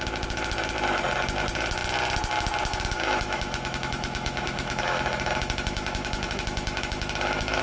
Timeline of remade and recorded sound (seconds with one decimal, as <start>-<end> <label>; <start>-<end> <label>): 0.0-2.7 recorded; 2.7-7.6 remade